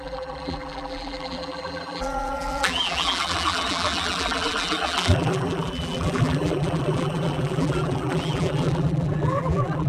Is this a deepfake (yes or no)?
yes